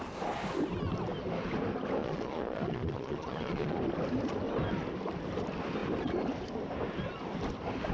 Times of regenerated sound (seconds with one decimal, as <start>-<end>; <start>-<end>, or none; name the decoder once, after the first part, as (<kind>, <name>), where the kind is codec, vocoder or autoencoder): 2.0-3.8 (vocoder, Vocos)